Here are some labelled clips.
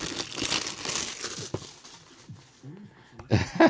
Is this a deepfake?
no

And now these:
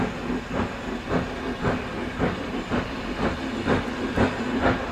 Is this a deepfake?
no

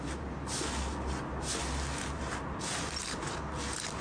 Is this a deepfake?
no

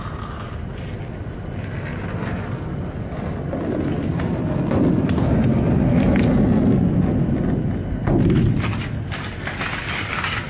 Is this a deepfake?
no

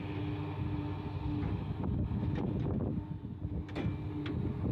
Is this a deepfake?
no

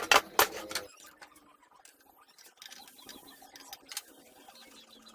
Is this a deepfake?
no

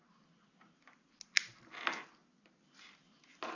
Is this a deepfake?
no